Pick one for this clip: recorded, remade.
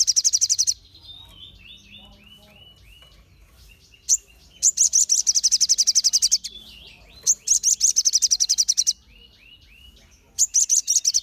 recorded